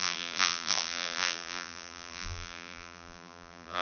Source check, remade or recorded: remade